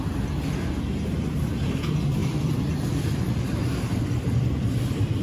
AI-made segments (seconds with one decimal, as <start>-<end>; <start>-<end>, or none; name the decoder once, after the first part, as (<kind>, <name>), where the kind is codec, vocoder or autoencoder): 2.2-4.3 (vocoder, BigVGAN v2)